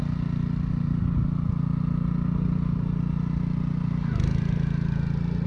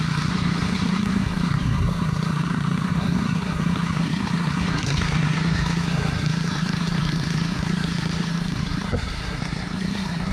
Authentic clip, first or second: first